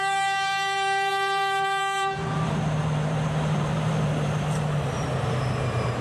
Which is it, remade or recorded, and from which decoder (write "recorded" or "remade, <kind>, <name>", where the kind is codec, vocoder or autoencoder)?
remade, vocoder, BigVGAN v2